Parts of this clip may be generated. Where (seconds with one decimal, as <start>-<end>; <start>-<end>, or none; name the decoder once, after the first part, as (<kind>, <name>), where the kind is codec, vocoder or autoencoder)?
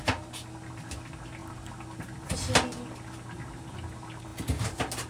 none